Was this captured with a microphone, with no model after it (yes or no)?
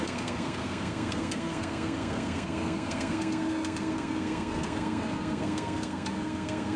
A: no